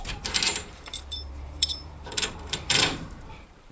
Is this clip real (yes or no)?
no